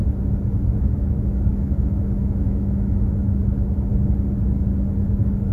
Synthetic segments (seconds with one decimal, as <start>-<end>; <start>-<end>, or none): 0.7-3.9